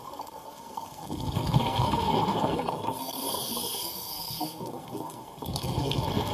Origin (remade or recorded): remade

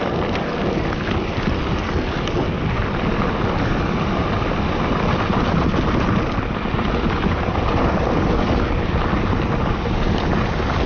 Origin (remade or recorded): recorded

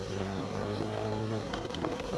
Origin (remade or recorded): remade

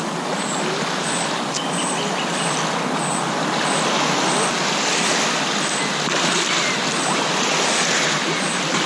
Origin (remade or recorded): recorded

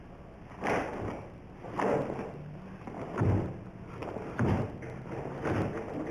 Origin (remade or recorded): recorded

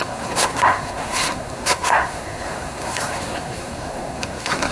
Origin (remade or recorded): remade